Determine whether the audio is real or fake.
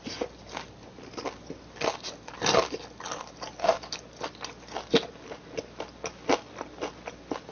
real